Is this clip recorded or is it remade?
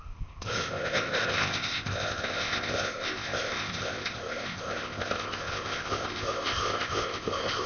remade